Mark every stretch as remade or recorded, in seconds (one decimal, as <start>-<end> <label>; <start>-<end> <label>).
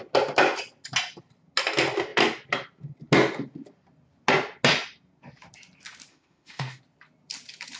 0.0-6.1 recorded; 6.1-6.8 remade; 6.8-7.8 recorded